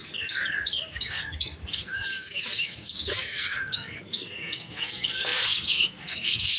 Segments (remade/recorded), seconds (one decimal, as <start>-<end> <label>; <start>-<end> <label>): 0.0-6.6 remade